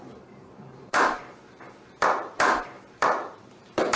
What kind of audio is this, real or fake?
fake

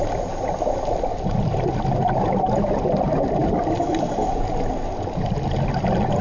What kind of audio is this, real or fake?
real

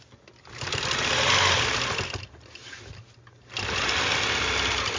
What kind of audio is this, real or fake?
real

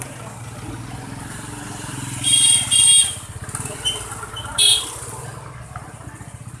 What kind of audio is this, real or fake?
real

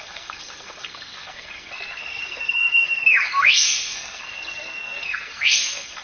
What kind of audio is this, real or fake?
fake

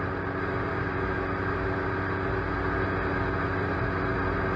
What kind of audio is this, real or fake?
real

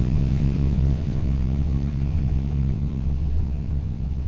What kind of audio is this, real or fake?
fake